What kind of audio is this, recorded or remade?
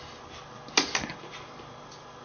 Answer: recorded